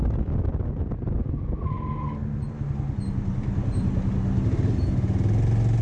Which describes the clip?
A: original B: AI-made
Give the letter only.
A